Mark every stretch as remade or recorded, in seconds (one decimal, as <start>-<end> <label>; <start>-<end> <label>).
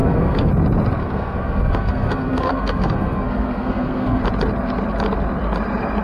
0.0-0.5 remade; 0.5-1.0 recorded; 1.0-4.2 remade; 4.2-6.0 recorded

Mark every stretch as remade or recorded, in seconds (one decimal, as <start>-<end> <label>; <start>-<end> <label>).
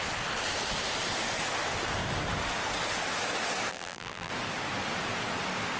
0.0-3.7 recorded; 3.7-4.3 remade; 4.3-5.8 recorded